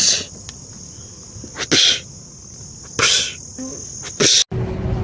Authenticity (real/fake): real